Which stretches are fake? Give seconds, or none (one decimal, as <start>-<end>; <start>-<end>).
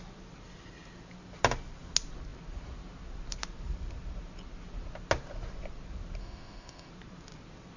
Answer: 6.2-6.9